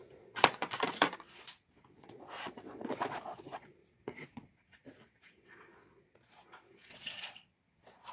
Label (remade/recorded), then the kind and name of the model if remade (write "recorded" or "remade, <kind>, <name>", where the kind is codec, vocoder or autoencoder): remade, vocoder, Vocos